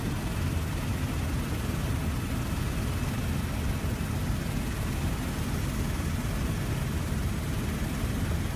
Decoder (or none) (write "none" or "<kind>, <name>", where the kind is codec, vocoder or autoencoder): none